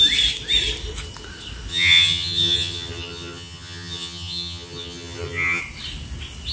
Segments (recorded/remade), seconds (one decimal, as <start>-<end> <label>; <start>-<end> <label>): 0.0-1.7 recorded; 1.7-5.6 remade; 5.6-6.5 recorded